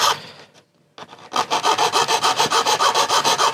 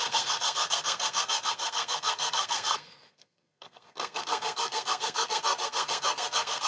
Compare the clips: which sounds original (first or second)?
first